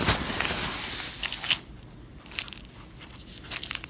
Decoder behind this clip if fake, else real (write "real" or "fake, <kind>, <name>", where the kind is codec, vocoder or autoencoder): real